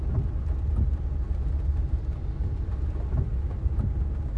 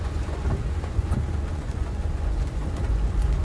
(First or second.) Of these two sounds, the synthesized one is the second